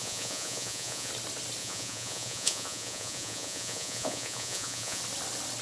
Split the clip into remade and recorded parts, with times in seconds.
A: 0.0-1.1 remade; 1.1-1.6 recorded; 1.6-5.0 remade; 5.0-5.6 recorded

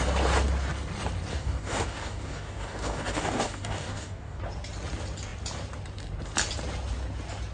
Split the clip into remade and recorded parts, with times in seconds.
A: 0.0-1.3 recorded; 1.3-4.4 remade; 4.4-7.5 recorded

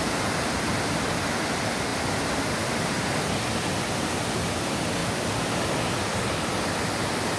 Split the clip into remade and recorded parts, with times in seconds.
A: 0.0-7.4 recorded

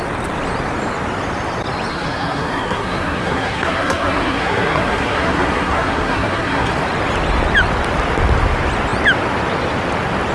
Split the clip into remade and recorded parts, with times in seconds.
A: 0.0-1.9 recorded; 1.9-6.7 remade; 6.7-10.3 recorded

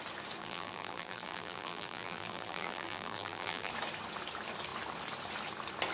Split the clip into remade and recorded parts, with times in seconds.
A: 0.0-0.4 recorded; 0.4-3.7 remade; 3.7-5.9 recorded

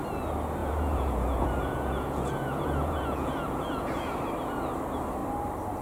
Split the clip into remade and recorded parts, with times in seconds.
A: 0.0-0.6 recorded; 0.6-4.1 remade; 4.1-5.8 recorded